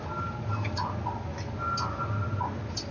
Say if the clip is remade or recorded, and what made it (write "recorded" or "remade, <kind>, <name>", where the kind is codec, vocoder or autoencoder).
recorded